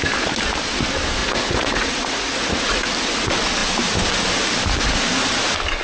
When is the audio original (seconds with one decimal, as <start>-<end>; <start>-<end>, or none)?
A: 0.0-1.2; 2.8-5.8

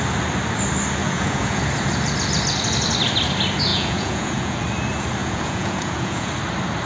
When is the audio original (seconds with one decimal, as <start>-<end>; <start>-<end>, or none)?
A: 0.0-1.0; 1.6-3.7; 4.6-5.2; 6.3-6.9

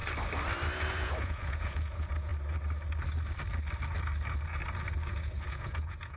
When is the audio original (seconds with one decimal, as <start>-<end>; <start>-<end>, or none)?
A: 0.0-0.9; 2.3-5.0

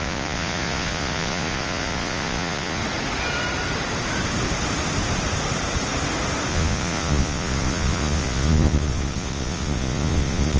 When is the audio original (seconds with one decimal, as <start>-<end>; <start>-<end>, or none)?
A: 2.8-6.5

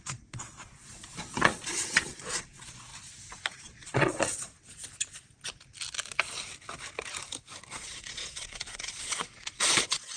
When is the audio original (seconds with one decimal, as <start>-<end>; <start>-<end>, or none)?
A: 2.9-3.6; 4.5-7.7

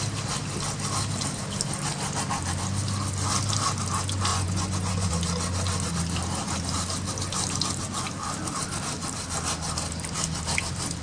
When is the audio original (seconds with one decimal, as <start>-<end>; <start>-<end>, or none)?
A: 0.0-4.3; 5.1-11.0

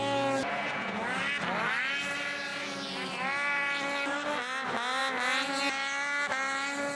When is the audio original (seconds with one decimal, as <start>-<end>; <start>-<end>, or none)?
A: 0.0-0.4; 1.0-7.0

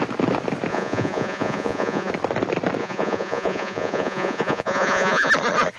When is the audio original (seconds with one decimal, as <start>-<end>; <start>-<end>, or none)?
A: 0.0-0.7; 2.1-2.8; 5.3-5.8